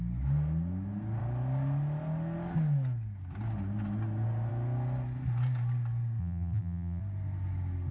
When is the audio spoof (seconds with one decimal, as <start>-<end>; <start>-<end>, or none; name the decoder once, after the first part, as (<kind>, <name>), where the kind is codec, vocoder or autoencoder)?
6.2-7.0 (vocoder, BigVGAN v2)